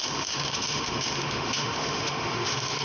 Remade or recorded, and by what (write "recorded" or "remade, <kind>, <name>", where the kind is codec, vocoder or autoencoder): remade, autoencoder, DAC-VAE